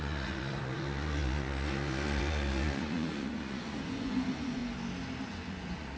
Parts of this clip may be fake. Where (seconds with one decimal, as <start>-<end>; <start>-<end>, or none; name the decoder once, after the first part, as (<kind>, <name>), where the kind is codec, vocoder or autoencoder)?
0.0-4.6 (vocoder, Vocos); 5.2-6.0